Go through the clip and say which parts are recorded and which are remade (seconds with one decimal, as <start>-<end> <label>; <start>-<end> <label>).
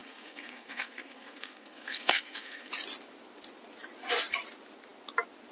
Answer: 0.0-2.7 remade; 2.7-5.5 recorded